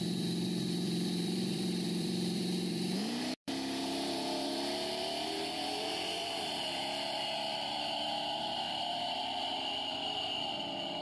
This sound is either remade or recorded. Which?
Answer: remade